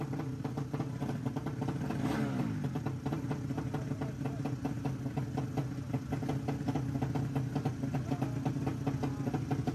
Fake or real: real